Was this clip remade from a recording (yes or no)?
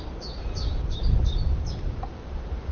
no